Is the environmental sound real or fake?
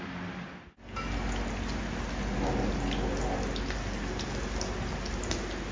real